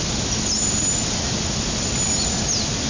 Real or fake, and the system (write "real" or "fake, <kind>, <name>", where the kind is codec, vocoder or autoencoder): real